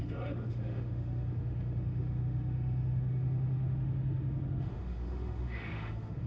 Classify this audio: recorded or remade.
remade